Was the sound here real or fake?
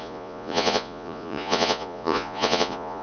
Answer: fake